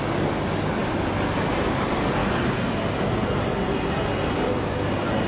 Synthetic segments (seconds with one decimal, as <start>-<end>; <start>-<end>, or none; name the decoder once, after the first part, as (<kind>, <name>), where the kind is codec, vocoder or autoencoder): none